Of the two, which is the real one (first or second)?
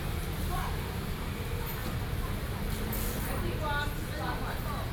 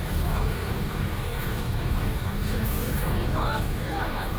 first